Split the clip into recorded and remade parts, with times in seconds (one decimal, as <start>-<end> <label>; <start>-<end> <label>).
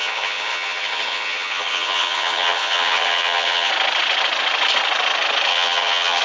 0.0-3.7 remade; 3.7-5.5 recorded; 5.5-6.2 remade